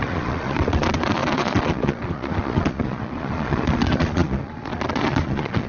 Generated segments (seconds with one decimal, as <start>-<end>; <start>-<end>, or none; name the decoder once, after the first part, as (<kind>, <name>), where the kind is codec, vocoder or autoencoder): 0.0-5.7 (vocoder, Vocos)